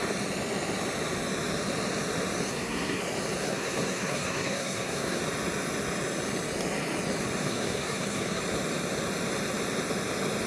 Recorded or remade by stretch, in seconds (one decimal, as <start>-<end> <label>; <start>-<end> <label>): 0.0-2.5 recorded; 2.5-3.0 remade; 3.0-3.4 recorded; 3.4-5.2 remade; 5.2-7.4 recorded; 7.4-8.4 remade; 8.4-10.5 recorded